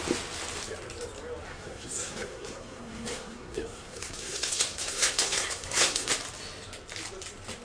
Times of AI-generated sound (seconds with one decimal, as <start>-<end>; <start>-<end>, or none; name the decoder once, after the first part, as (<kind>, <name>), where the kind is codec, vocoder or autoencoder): 1.5-6.1 (codec, SNAC)